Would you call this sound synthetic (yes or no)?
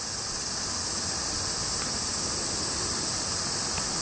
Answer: no